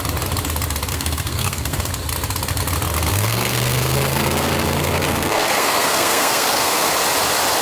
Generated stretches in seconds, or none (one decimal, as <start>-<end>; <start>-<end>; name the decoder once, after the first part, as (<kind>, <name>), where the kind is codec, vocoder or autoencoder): 0.9-1.9 (codec, SNAC); 3.1-7.0